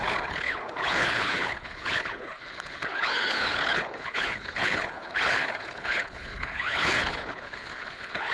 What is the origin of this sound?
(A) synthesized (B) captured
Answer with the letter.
A